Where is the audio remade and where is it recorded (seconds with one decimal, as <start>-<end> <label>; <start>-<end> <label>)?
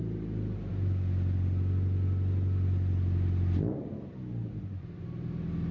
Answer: 0.0-5.7 recorded